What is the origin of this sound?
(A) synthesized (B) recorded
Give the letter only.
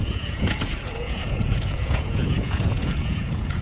A